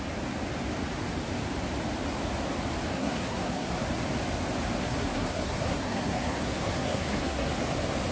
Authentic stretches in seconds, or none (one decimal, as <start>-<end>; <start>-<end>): 0.0-2.9; 3.7-4.8; 7.5-8.1